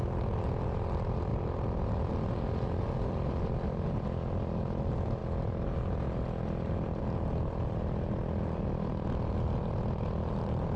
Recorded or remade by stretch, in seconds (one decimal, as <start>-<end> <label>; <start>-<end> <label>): 0.0-10.8 recorded